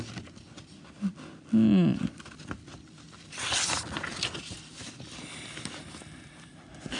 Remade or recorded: recorded